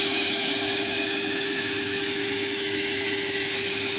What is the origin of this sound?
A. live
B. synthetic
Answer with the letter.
B